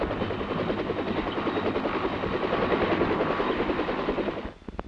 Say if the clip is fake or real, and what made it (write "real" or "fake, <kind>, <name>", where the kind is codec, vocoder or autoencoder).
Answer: real